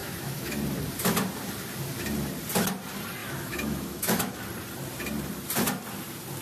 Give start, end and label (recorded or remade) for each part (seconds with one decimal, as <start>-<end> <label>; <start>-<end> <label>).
0.0-0.6 remade; 0.6-3.2 recorded; 3.2-4.4 remade; 4.4-6.4 recorded